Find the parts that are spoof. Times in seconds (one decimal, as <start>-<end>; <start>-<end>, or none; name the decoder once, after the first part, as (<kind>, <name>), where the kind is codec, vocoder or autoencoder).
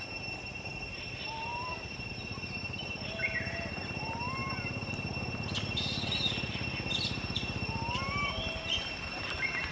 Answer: none